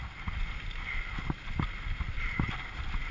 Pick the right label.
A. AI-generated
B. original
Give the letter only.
B